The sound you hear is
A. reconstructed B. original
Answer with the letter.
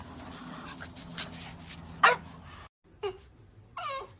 B